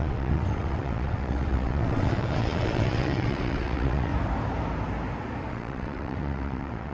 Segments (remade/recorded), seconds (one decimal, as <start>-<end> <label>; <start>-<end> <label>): 0.0-4.1 remade; 4.1-5.5 recorded; 5.5-6.9 remade